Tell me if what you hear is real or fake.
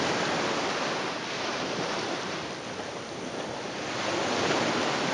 real